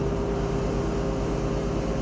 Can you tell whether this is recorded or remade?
recorded